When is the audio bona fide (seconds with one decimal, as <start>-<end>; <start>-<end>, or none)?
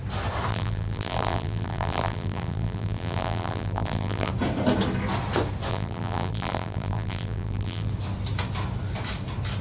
0.0-0.5; 4.3-5.7; 7.9-9.6